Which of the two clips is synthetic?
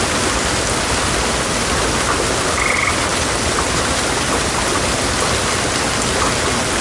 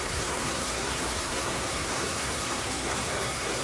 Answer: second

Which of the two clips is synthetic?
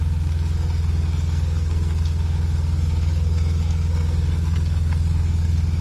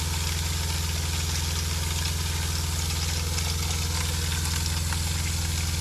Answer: first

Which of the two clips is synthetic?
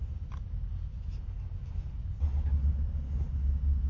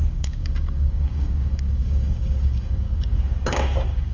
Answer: second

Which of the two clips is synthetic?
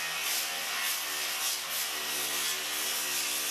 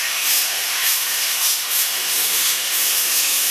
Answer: second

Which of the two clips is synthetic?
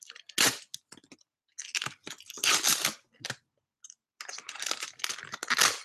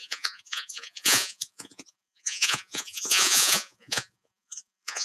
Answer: second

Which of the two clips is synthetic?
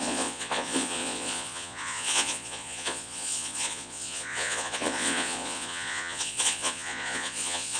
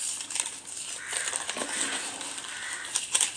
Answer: first